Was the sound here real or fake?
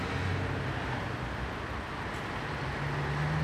real